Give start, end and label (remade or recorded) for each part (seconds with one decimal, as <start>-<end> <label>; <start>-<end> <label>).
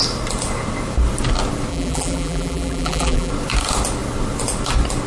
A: 0.0-1.7 recorded; 1.7-3.3 remade; 3.3-5.1 recorded